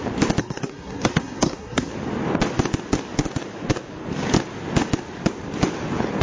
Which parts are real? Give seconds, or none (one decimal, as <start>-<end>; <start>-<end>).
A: 0.0-0.4; 1.9-6.2